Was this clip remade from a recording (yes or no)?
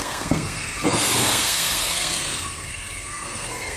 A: yes